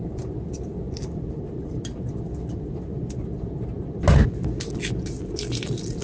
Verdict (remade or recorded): recorded